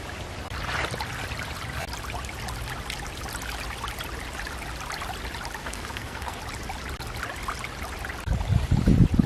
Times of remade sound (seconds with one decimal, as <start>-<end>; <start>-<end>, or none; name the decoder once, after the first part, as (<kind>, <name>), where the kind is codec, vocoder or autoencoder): 5.6-6.4 (codec, SNAC)

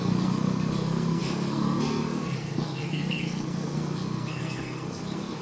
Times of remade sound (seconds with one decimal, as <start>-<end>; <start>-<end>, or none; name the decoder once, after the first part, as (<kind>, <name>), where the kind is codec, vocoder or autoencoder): 0.0-5.4 (codec, SNAC)